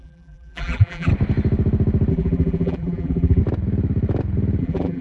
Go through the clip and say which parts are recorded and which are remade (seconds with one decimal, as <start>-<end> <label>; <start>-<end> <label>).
0.0-1.1 remade; 1.1-2.1 recorded; 2.1-3.4 remade; 3.4-4.6 recorded; 4.6-5.0 remade